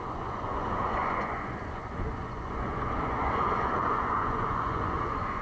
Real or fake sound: fake